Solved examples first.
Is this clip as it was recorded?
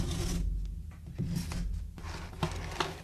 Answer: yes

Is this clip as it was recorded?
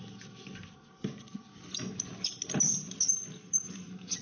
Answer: yes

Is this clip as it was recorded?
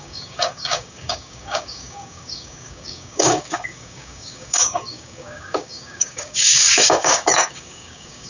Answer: no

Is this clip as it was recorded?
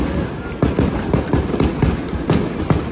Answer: yes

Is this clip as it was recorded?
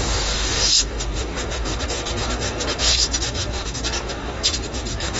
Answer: no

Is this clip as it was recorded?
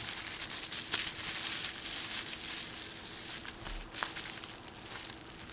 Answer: yes